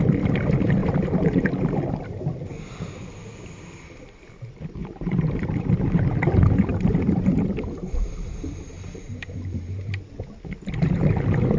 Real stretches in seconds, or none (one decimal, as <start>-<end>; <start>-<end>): 0.0-0.8; 1.5-4.8; 5.7-6.7; 9.8-11.6